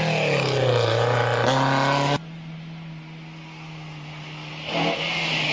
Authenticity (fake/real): real